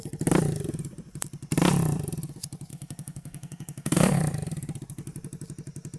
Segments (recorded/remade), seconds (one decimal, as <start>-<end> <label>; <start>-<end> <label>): 0.0-2.7 recorded; 2.7-4.2 remade; 4.2-6.0 recorded